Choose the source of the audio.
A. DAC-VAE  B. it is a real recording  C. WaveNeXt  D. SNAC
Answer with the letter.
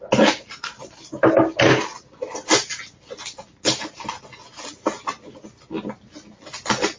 B